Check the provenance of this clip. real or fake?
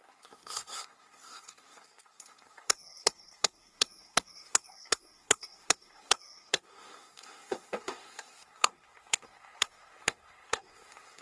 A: fake